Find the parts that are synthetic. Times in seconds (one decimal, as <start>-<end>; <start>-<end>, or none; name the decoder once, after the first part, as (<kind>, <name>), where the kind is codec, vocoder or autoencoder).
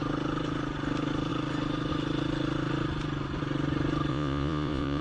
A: 4.1-5.0 (vocoder, Vocos)